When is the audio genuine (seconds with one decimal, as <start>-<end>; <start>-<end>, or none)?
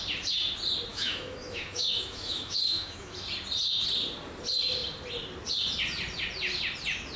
0.0-0.9; 3.1-7.2